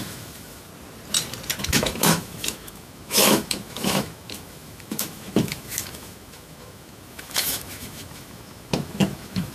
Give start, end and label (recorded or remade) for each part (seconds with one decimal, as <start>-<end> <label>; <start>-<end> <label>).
0.0-0.7 remade; 0.7-1.6 recorded; 1.6-9.5 remade